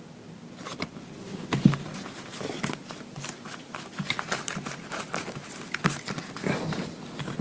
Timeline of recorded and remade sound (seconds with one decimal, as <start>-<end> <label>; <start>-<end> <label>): 0.0-0.7 recorded; 0.7-5.0 remade; 5.0-7.4 recorded